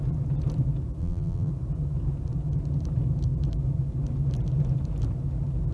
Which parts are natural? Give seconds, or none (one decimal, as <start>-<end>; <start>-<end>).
0.0-1.0; 1.5-5.7